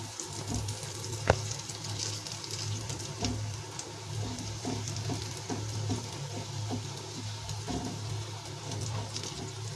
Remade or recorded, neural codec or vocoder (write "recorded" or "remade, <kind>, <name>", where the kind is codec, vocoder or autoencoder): recorded